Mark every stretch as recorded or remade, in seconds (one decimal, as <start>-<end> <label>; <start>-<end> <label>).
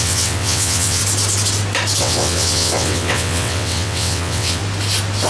0.0-1.0 remade; 1.0-2.0 recorded; 2.0-4.6 remade; 4.6-5.3 recorded